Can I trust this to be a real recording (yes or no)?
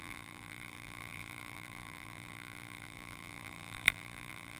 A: no